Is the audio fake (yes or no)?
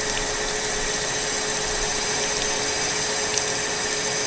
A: no